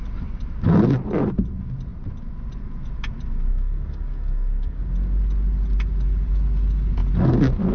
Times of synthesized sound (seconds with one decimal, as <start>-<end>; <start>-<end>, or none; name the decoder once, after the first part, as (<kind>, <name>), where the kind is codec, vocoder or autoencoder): 3.5-4.8 (codec, SNAC)